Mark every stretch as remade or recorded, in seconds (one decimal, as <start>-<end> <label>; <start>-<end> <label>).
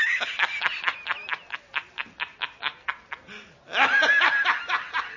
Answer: 0.0-5.2 recorded